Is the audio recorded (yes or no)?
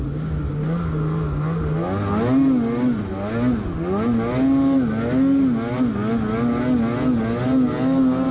yes